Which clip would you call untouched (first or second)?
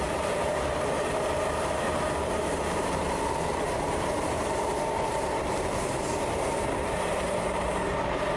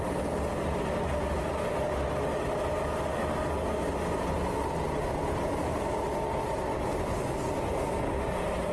second